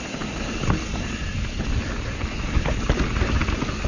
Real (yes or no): yes